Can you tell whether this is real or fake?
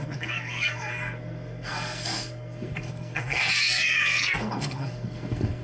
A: fake